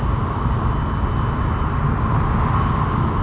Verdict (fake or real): real